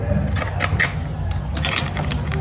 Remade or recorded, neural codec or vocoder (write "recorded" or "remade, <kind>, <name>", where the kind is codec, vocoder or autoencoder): recorded